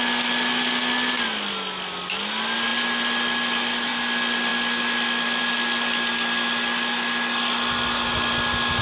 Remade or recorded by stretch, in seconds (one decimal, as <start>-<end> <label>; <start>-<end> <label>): 0.0-8.8 recorded